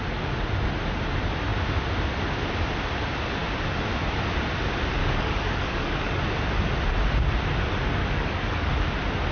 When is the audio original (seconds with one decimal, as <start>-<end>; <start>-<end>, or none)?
0.0-5.0; 6.2-8.0; 8.7-9.3